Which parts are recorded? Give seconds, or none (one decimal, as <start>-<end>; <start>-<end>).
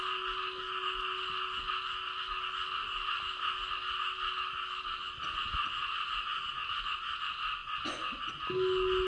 0.0-7.6; 8.2-9.1